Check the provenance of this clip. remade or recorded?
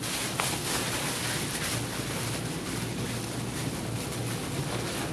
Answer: recorded